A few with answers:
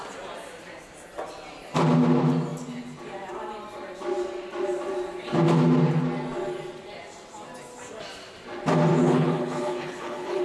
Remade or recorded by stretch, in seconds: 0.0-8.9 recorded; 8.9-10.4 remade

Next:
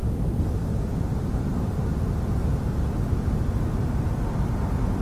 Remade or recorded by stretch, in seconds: 0.0-5.0 recorded

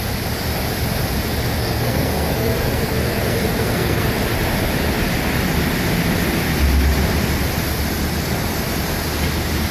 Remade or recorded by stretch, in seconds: 0.0-1.6 recorded; 1.6-4.1 remade; 4.1-9.7 recorded

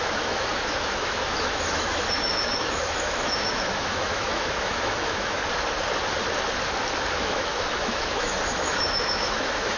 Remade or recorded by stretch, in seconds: 0.0-5.4 remade; 5.4-7.2 recorded; 7.2-9.8 remade

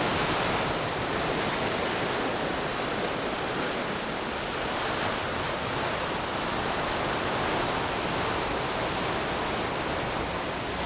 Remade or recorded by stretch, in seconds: 0.0-10.9 recorded

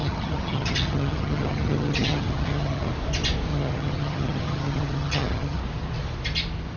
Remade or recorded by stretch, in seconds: 0.0-2.9 remade; 2.9-3.5 recorded; 3.5-5.6 remade; 5.6-6.8 recorded

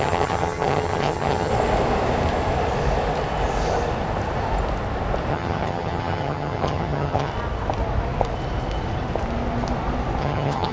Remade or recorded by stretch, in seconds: 0.0-1.5 remade; 1.5-5.3 recorded; 5.3-7.3 remade; 7.3-10.2 recorded; 10.2-10.7 remade